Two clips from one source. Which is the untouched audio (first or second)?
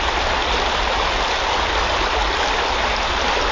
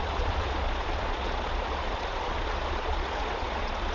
first